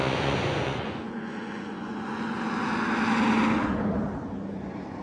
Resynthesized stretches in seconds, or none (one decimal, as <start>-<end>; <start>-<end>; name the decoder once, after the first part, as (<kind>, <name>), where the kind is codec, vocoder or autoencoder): 0.0-2.4 (vocoder, Vocos)